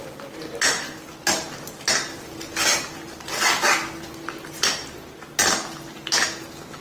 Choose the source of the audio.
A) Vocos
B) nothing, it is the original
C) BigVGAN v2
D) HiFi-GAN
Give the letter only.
B